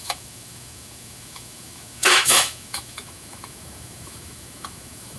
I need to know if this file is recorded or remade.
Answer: remade